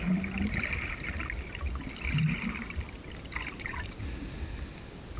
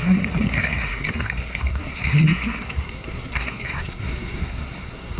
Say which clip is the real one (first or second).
first